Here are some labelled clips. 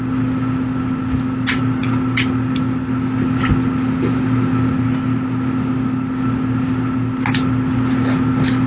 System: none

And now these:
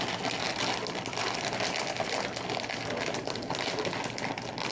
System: none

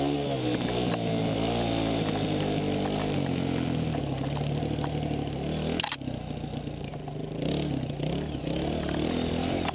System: none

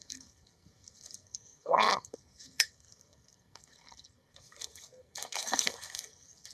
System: codec, SNAC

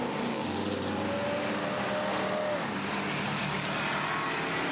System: none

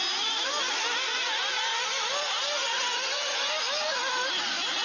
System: none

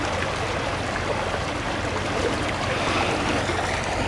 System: none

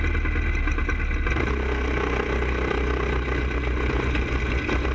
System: none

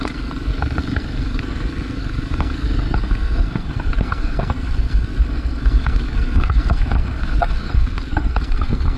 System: codec, SNAC